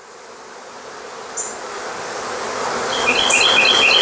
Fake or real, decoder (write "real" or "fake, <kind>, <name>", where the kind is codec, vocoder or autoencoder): real